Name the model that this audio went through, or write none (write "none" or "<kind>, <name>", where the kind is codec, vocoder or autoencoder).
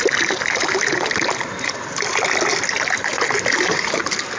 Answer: none